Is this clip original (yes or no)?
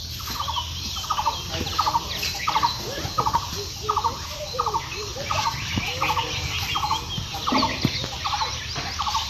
yes